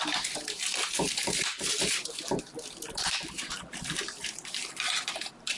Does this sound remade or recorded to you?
remade